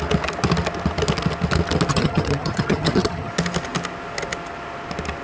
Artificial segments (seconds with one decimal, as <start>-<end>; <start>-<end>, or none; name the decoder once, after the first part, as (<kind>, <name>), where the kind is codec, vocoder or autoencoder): 1.9-3.3 (vocoder, HiFi-GAN)